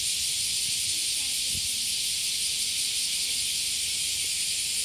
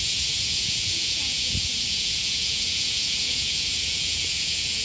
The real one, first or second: first